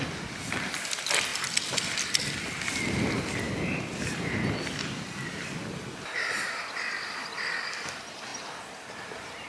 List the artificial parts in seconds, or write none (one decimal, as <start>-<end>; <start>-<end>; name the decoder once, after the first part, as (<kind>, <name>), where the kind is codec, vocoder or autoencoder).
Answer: none